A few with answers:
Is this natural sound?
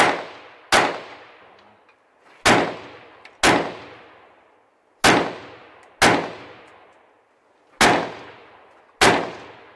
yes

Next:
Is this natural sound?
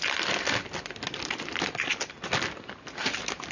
yes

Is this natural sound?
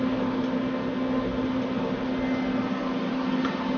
yes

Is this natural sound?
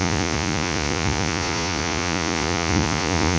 no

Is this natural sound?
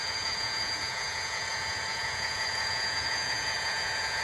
no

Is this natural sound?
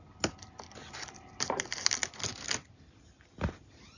yes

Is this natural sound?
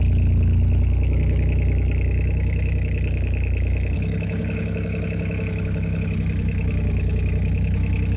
no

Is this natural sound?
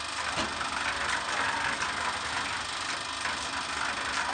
yes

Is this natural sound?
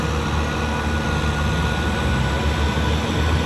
yes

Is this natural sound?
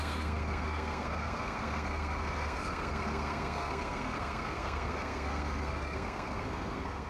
no